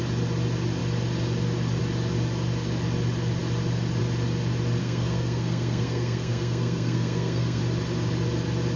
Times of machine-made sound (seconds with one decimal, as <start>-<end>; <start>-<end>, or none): 4.8-7.6